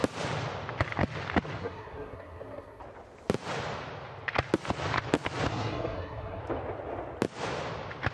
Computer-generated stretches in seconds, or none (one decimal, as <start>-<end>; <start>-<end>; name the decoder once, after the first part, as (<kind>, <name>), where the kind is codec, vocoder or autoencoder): 1.6-2.8 (codec, SNAC); 5.5-6.4